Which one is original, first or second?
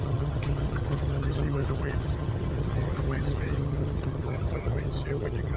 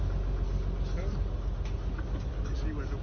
second